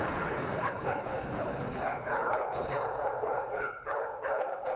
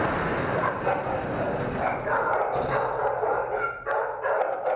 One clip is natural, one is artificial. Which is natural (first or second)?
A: second